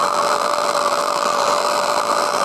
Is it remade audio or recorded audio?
remade